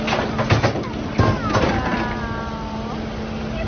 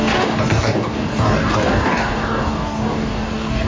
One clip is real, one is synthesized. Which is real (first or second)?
first